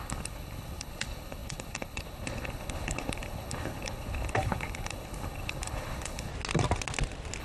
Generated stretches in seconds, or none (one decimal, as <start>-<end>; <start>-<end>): 0.0-6.3